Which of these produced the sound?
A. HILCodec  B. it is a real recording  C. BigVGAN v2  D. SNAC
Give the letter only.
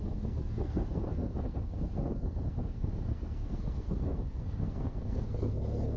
D